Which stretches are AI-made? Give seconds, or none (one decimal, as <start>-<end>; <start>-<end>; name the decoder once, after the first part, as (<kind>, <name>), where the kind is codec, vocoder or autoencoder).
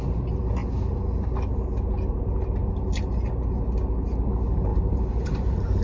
4.7-5.8 (vocoder, BigVGAN v2)